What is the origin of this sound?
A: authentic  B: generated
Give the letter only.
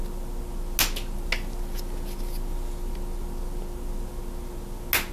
A